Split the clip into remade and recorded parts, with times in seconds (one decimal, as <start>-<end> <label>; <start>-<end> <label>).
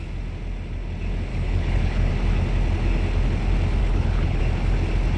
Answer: 0.0-1.3 recorded; 1.3-2.1 remade; 2.1-3.8 recorded; 3.8-4.4 remade; 4.4-5.2 recorded